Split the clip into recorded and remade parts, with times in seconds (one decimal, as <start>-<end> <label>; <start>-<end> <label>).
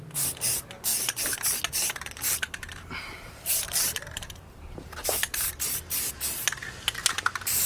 0.0-0.9 recorded; 0.9-5.5 remade; 5.5-7.7 recorded